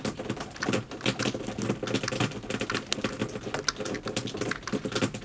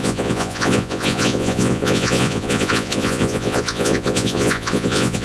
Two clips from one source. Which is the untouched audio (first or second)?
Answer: first